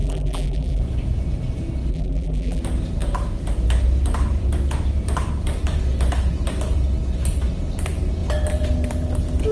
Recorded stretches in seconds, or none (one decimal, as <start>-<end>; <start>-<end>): 0.8-1.9; 2.6-9.5